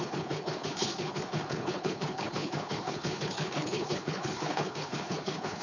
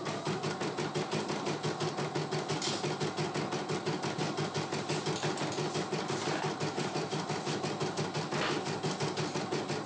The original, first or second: second